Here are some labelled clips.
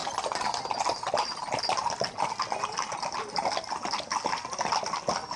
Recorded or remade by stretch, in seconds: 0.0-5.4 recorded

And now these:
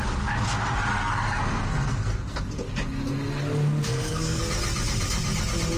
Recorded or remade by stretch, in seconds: 0.0-0.9 recorded; 0.9-2.4 remade; 2.4-3.9 recorded; 3.9-4.4 remade; 4.4-5.8 recorded

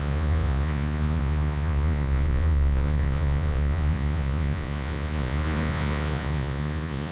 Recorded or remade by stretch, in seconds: 0.0-7.1 remade

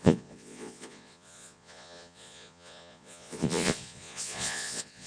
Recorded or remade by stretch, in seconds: 0.0-5.1 remade

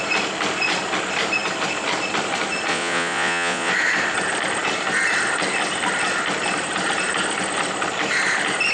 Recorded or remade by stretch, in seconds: 0.0-2.7 recorded; 2.7-3.7 remade; 3.7-8.7 recorded

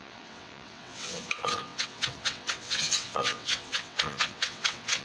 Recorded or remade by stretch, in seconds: 0.0-5.0 remade